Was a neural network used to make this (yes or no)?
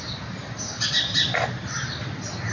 no